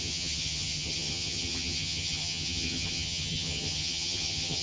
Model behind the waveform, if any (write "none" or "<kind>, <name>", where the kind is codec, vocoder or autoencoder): vocoder, HiFi-GAN